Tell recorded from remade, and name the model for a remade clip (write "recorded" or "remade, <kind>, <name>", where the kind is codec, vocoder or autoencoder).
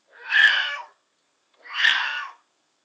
remade, codec, SNAC